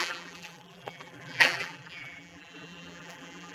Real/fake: fake